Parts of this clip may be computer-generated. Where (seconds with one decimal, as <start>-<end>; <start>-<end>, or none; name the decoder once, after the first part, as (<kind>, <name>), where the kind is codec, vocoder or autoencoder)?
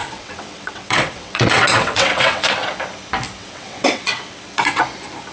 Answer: 0.0-2.8 (vocoder, WaveNeXt); 3.4-4.8